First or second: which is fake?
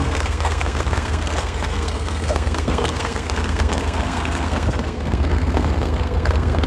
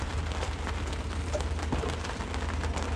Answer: first